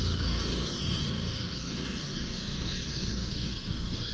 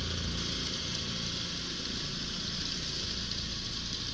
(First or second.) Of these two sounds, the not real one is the first